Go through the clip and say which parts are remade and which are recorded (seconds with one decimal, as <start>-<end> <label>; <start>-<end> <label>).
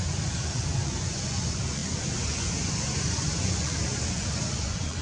0.0-5.0 remade